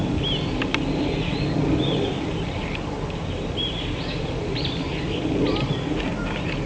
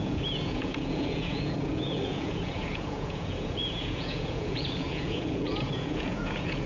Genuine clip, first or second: first